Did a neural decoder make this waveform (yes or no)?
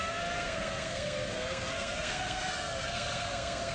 yes